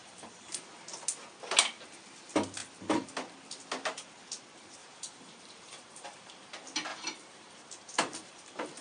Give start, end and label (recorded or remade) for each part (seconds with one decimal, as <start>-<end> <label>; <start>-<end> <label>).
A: 0.0-0.6 remade; 0.6-4.8 recorded; 4.8-6.5 remade; 6.5-6.9 recorded; 6.9-8.8 remade